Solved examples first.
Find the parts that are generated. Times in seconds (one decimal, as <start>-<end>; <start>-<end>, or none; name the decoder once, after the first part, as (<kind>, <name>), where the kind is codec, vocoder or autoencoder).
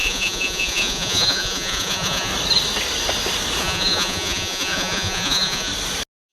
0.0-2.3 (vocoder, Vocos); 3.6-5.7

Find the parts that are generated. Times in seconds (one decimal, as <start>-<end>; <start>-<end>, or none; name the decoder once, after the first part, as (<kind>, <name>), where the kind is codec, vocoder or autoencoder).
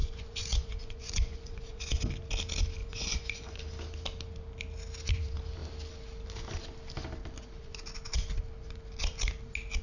0.0-2.1 (vocoder, Vocos); 2.8-3.6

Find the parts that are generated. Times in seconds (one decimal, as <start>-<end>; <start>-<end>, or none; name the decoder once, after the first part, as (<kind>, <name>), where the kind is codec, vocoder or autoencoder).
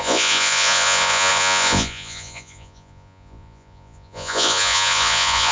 0.0-5.5 (vocoder, Vocos)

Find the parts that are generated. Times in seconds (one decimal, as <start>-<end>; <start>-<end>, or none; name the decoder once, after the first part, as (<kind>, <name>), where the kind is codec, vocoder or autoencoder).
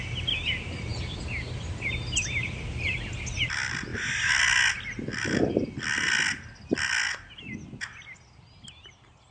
none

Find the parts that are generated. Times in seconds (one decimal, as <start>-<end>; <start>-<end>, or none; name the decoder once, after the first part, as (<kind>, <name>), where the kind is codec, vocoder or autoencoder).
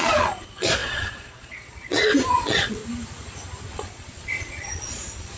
0.0-2.8 (vocoder, Vocos); 3.7-5.4